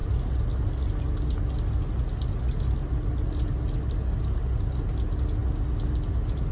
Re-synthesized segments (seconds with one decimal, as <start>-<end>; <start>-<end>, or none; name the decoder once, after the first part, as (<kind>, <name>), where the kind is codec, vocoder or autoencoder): none